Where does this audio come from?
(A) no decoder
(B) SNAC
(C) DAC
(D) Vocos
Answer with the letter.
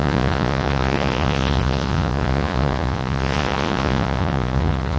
D